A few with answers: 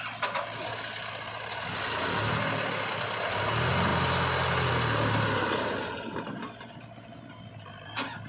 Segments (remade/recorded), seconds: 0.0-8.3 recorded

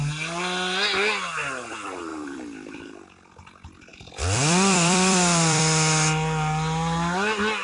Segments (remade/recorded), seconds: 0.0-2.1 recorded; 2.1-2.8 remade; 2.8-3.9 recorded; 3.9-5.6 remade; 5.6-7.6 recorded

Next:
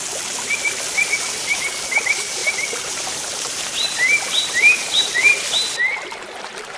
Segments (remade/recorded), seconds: 0.0-2.4 recorded; 2.4-5.3 remade; 5.3-6.8 recorded

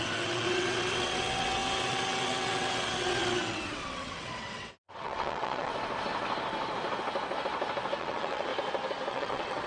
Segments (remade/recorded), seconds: 0.0-5.7 remade; 5.7-8.0 recorded; 8.0-8.5 remade; 8.5-9.1 recorded; 9.1-9.7 remade